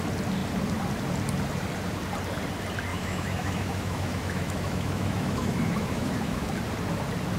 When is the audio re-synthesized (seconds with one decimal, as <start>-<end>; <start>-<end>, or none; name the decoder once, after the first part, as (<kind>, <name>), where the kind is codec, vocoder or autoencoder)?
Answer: 2.9-6.5 (autoencoder, DAC-VAE)